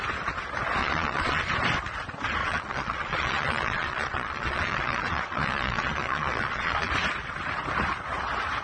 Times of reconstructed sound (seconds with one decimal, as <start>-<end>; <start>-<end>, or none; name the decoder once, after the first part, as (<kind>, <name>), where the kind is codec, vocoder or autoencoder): 0.8-1.4 (vocoder, Vocos); 2.4-6.9